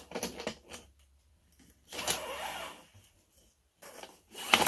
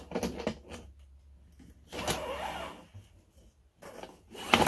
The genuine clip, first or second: second